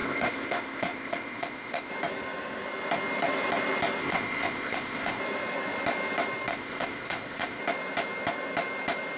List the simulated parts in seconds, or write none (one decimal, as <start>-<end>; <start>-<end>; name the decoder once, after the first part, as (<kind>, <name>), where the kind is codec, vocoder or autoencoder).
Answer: 0.0-1.9 (codec, ZipCodec); 4.0-5.2; 6.5-7.6